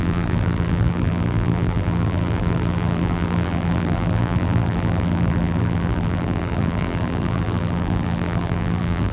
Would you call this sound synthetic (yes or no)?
yes